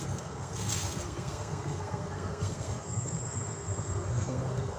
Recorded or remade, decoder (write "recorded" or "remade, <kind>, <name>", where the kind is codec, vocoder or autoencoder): remade, codec, SNAC